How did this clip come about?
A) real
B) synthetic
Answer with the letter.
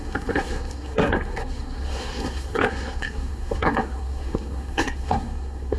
B